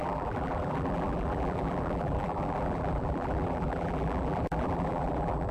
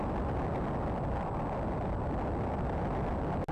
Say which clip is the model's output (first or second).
first